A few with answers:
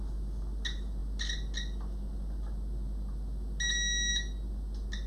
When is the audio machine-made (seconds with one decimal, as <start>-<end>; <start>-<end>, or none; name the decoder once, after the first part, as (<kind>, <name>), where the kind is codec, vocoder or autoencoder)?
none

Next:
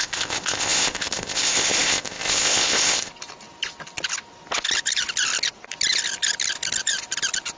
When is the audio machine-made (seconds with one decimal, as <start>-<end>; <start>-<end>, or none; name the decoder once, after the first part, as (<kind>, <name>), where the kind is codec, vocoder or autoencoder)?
0.0-3.1 (codec, ZipCodec)

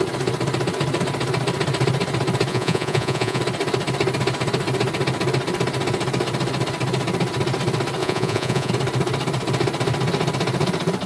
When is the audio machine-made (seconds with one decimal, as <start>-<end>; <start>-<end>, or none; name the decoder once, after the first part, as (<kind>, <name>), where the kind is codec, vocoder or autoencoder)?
2.5-3.4 (vocoder, Vocos); 8.0-8.7

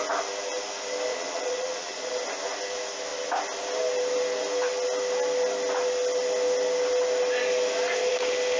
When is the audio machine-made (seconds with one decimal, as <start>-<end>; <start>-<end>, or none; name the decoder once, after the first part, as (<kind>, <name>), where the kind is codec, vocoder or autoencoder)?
1.1-2.1 (vocoder, Vocos)

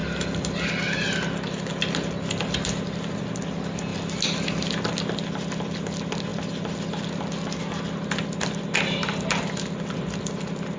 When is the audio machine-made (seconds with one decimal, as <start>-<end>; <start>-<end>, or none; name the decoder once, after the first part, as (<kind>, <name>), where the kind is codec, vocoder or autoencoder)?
none

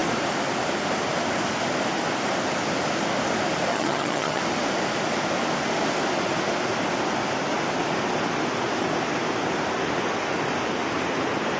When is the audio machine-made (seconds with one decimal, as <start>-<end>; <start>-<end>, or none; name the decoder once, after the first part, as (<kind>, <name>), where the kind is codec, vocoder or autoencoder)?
3.7-4.4 (vocoder, HiFi-GAN)

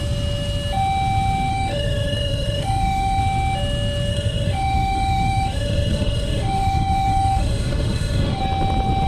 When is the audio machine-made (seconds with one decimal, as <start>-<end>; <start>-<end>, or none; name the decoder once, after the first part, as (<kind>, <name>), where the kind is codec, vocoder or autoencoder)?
1.5-3.2 (autoencoder, DAC-VAE); 4.1-8.4

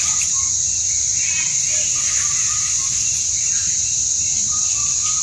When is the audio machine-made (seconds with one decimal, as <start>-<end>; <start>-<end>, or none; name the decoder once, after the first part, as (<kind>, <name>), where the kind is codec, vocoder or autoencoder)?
1.2-4.3 (vocoder, BigVGAN v2)